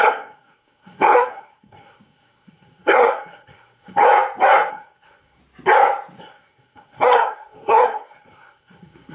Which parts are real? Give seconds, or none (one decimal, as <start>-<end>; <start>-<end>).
4.0-4.7; 5.4-6.2